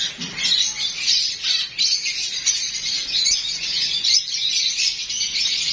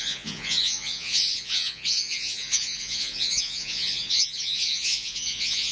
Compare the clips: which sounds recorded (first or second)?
first